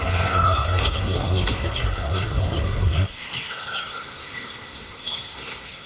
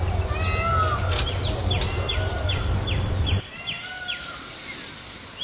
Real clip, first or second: second